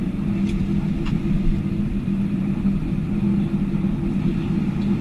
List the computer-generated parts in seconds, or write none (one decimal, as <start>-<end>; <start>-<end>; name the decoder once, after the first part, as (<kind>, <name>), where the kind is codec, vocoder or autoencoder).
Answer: none